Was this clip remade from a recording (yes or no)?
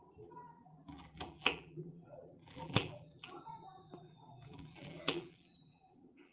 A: yes